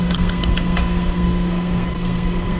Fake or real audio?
fake